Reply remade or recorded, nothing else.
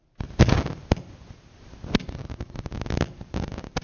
recorded